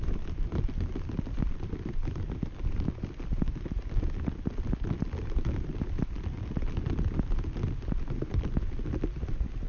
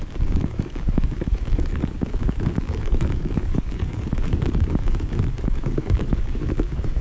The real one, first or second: first